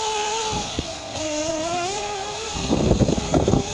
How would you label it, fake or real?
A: fake